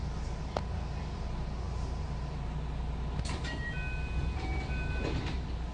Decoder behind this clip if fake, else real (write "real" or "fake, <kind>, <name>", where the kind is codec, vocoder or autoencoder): real